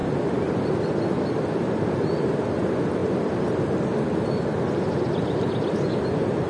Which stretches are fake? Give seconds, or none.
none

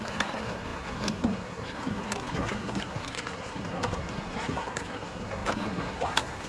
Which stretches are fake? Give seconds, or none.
0.0-6.5 (codec, SNAC)

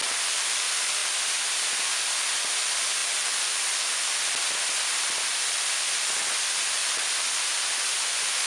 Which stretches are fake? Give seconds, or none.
none

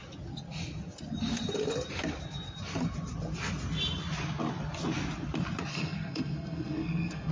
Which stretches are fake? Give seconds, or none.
5.7-7.3 (codec, SNAC)

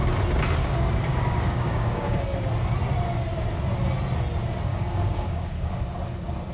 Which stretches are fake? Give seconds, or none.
0.6-2.2 (codec, DAC); 4.7-5.8

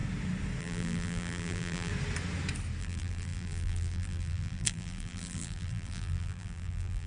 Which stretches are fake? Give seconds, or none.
0.6-1.9 (vocoder, BigVGAN v2); 2.8-7.1

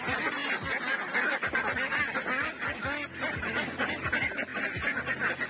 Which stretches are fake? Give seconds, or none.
none